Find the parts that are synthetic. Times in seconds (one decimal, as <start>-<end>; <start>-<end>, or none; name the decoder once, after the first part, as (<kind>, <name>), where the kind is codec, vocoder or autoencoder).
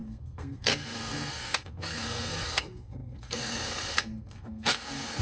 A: 0.0-5.2 (codec, SNAC)